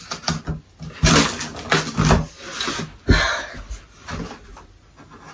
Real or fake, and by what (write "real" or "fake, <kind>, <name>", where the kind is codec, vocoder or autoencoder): real